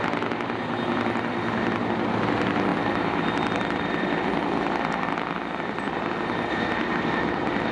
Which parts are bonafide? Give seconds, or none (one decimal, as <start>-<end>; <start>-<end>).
0.0-7.7